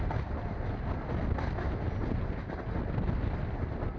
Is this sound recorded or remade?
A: recorded